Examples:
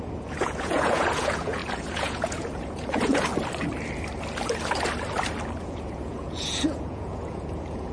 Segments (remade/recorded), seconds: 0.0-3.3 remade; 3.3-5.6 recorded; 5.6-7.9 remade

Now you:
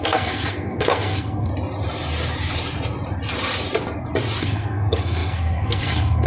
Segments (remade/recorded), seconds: 0.0-1.5 remade; 1.5-4.4 recorded; 4.4-6.3 remade

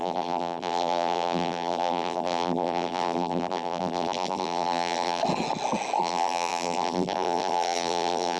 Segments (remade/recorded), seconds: 0.0-5.2 remade; 5.2-6.0 recorded; 6.0-8.4 remade

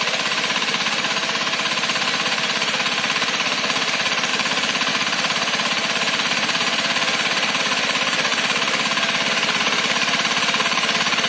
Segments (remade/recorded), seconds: 0.0-8.3 remade; 8.3-9.3 recorded; 9.3-11.3 remade

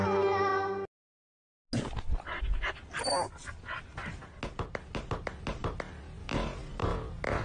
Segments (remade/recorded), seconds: 0.0-7.4 recorded